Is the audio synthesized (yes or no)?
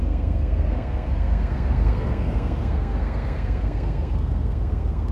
yes